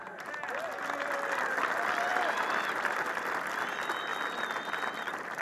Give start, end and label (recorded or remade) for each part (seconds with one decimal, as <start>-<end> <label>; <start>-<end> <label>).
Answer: 0.0-2.1 recorded; 2.1-3.4 remade; 3.4-5.4 recorded